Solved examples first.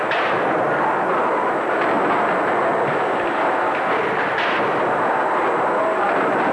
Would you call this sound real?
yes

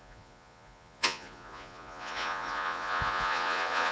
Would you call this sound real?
no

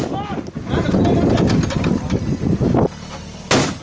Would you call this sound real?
yes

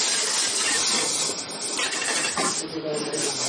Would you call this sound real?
yes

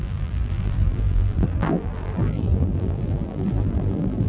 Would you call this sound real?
no